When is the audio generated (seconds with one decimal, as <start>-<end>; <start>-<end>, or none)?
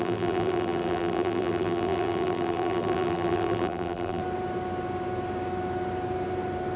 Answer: 0.0-4.2